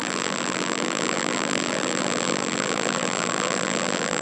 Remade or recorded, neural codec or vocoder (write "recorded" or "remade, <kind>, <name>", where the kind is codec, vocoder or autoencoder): remade, vocoder, BigVGAN v2